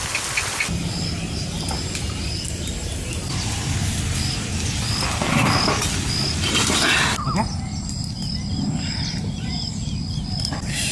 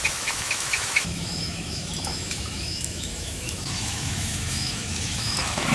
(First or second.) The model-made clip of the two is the second